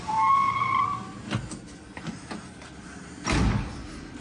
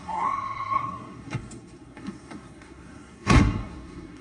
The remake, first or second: second